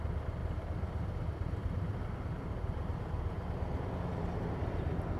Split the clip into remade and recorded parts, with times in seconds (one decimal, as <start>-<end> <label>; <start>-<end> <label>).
0.0-1.6 recorded; 1.6-3.5 remade; 3.5-5.2 recorded